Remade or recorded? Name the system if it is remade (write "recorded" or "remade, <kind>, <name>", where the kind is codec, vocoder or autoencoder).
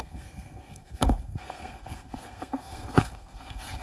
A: remade, codec, SNAC